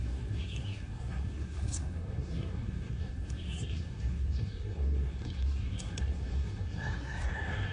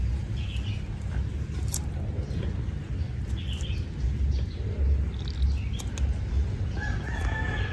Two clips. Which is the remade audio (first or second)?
first